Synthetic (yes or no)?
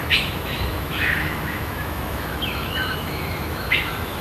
yes